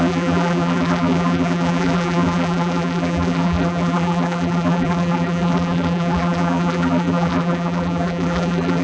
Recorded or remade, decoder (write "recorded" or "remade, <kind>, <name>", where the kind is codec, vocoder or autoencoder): remade, vocoder, BigVGAN v2